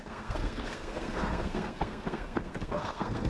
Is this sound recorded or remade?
remade